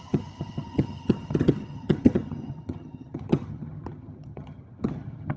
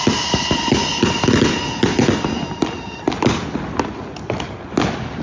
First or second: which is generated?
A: first